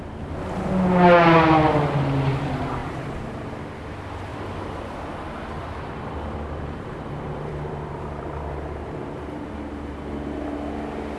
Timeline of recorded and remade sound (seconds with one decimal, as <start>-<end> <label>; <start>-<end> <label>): 0.0-2.8 recorded; 2.8-3.5 remade; 3.5-4.3 recorded; 4.3-9.5 remade; 9.5-11.2 recorded